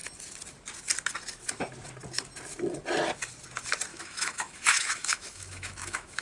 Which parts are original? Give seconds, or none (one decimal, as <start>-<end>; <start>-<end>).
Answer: 0.0-3.9